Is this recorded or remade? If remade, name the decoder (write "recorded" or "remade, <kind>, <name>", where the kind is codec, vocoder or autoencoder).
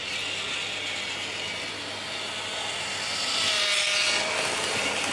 recorded